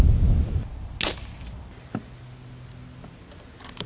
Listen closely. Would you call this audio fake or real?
real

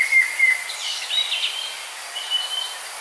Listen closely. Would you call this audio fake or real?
real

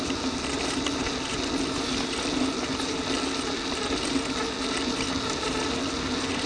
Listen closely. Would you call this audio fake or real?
real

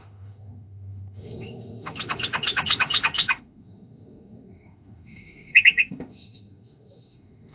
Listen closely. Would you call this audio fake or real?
fake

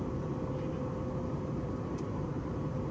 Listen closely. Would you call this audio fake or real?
real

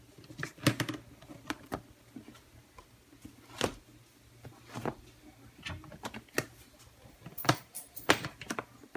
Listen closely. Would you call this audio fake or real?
real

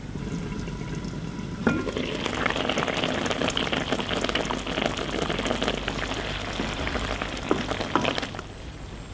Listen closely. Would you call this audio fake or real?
real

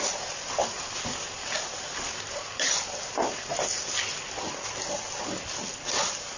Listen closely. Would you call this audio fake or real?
real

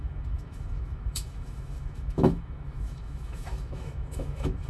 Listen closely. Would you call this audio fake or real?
fake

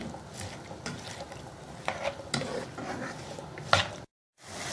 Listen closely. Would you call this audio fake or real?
real